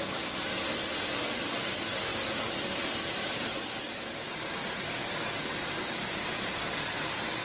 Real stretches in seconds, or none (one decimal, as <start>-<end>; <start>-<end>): 0.0-2.1; 6.5-7.4